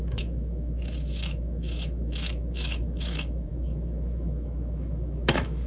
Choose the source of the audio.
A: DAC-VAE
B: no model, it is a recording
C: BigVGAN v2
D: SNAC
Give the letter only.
A